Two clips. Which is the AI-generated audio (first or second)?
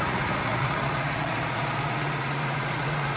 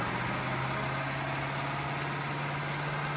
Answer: first